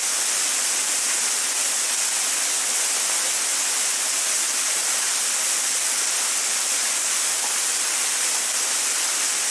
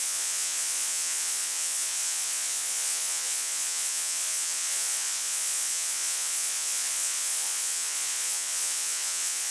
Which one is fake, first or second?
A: second